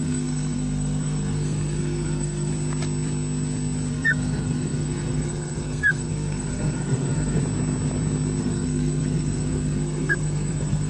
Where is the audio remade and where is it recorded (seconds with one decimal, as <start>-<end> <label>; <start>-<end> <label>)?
0.0-2.5 remade; 2.5-3.9 recorded; 3.9-7.4 remade; 7.4-8.4 recorded; 8.4-10.9 remade